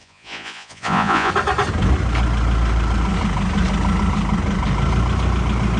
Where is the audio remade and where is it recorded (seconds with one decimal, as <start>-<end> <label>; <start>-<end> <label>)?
0.0-1.3 remade; 1.3-5.8 recorded